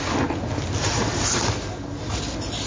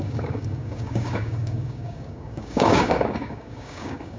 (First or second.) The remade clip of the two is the second